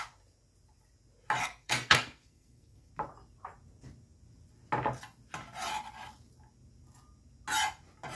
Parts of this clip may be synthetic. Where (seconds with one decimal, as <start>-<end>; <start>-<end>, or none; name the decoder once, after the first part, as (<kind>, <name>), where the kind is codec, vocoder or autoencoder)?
1.4-2.9 (codec, SNAC)